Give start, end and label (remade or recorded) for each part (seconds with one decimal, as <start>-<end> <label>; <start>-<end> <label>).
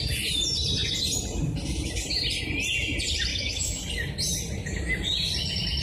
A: 0.0-3.3 recorded; 3.3-3.8 remade; 3.8-5.8 recorded